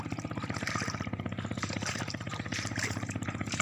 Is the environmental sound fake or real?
fake